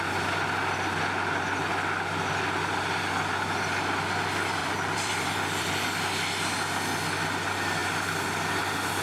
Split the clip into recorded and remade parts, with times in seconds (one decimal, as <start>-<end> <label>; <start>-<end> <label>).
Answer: 0.0-4.6 recorded; 4.6-5.7 remade; 5.7-9.0 recorded

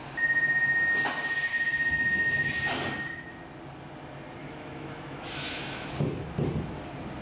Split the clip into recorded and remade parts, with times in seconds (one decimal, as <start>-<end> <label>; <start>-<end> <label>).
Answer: 0.0-1.5 recorded; 1.5-2.5 remade; 2.5-4.4 recorded; 4.4-5.9 remade; 5.9-7.2 recorded

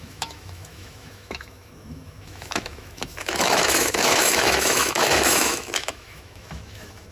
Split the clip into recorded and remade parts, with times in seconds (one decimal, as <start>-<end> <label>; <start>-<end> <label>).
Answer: 0.0-7.1 remade

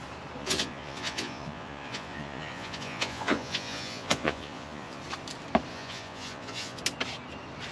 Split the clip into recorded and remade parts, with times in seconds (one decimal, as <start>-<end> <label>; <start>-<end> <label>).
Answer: 0.0-0.4 recorded; 0.4-5.0 remade; 5.0-5.7 recorded; 5.7-6.8 remade; 6.8-7.7 recorded

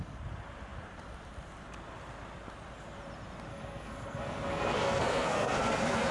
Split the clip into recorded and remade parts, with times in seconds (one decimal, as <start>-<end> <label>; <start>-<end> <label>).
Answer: 0.0-3.5 recorded; 3.5-6.1 remade

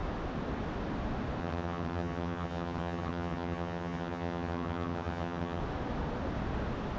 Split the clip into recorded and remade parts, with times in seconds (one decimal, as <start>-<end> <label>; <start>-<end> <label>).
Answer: 0.0-1.4 recorded; 1.4-5.6 remade; 5.6-7.0 recorded

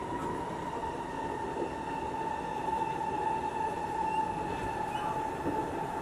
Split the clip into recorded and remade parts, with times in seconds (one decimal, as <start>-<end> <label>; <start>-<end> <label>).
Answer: 0.0-6.0 recorded

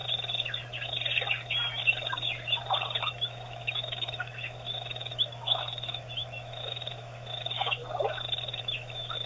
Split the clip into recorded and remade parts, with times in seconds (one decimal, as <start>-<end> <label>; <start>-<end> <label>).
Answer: 0.0-3.0 recorded; 3.0-7.8 remade; 7.8-8.6 recorded; 8.6-9.3 remade